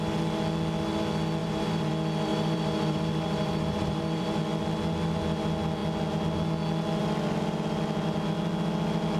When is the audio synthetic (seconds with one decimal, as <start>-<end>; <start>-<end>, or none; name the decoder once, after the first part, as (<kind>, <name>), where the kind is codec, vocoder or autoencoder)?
1.4-1.9 (vocoder, BigVGAN v2); 2.3-4.4